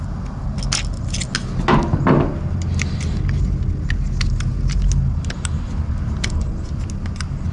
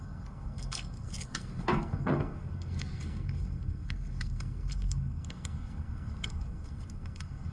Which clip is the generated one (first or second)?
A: second